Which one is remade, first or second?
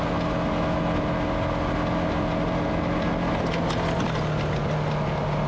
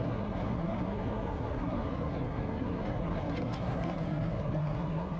second